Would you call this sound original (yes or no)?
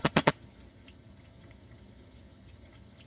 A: no